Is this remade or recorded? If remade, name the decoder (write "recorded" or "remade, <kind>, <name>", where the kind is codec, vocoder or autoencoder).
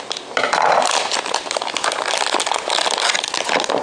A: recorded